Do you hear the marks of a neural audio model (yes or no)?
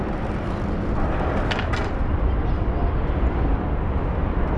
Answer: no